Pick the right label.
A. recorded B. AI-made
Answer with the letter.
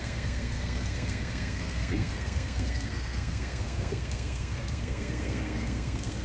B